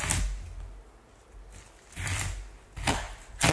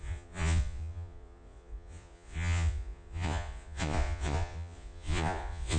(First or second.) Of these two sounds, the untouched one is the first